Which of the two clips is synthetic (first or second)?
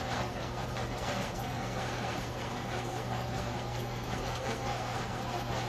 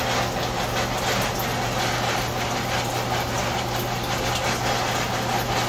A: first